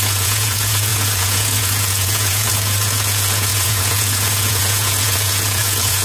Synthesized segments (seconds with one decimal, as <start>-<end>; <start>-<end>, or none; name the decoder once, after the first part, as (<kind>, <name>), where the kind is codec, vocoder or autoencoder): 0.0-6.0 (vocoder, Vocos)